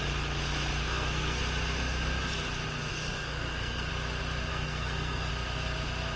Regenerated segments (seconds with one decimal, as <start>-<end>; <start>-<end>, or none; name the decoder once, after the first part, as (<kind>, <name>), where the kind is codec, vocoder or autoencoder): 0.8-1.4 (codec, SNAC); 2.9-3.9; 4.5-5.3